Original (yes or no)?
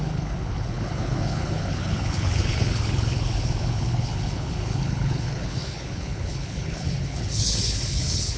no